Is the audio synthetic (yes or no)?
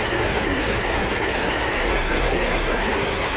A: yes